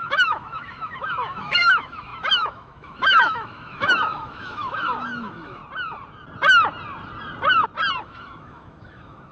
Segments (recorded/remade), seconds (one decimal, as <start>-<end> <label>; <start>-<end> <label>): 0.0-5.6 remade; 5.6-8.0 recorded; 8.0-9.3 remade